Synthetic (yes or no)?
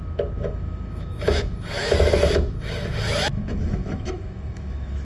yes